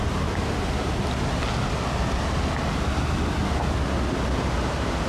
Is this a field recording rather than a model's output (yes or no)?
yes